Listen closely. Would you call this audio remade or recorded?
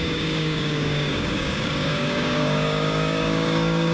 remade